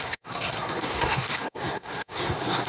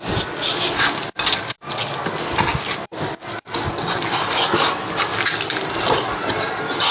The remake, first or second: first